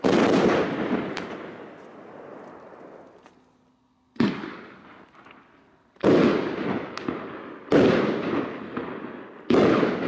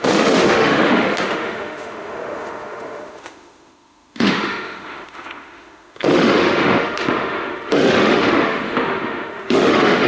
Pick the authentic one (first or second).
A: first